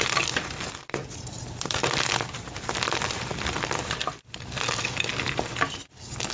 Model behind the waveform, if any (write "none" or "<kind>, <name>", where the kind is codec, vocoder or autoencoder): vocoder, BigVGAN v2